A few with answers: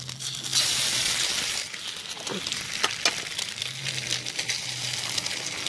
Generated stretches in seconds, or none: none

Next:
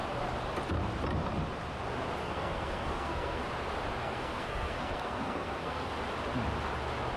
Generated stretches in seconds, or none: 2.2-3.5 (codec, SNAC); 4.0-5.9

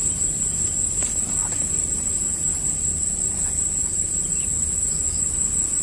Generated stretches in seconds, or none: none

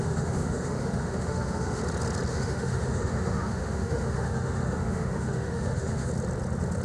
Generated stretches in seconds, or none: 0.0-1.8 (autoencoder, DAC-VAE); 2.3-6.1

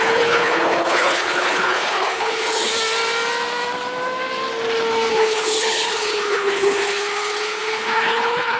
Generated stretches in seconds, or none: 0.0-2.7 (codec, HILCodec); 5.1-8.6

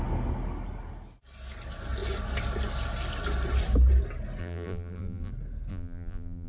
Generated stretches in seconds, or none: 4.4-5.3 (vocoder, BigVGAN v2); 5.7-6.5

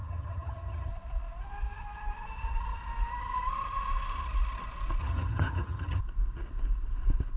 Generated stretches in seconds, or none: 0.0-0.9 (vocoder, HiFi-GAN); 5.0-6.0

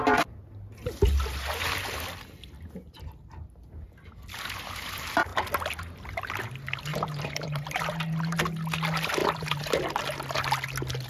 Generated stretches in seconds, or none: 6.9-8.4 (vocoder, BigVGAN v2); 9.2-10.4